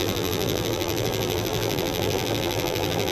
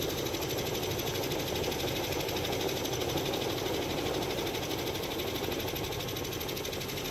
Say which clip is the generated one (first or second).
first